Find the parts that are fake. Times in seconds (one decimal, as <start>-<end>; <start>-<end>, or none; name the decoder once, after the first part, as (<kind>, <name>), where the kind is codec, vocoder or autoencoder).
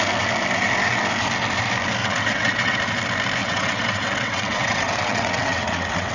2.0-2.8 (vocoder, WaveNeXt); 3.4-6.1